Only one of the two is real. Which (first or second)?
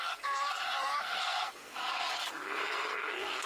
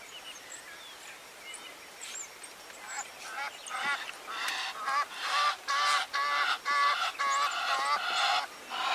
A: second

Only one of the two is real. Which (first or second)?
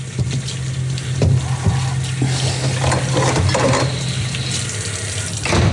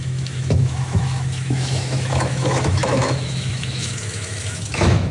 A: first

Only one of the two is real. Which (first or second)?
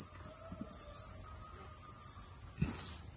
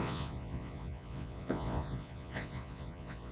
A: first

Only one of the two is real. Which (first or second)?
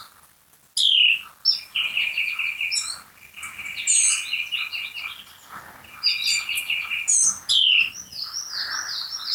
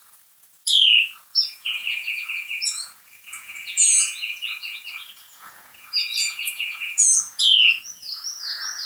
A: first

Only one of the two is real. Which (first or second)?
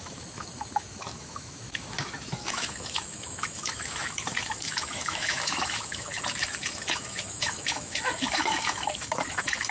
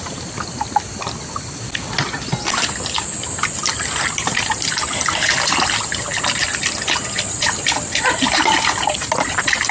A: second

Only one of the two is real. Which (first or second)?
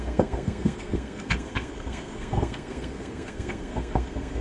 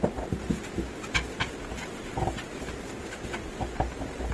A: second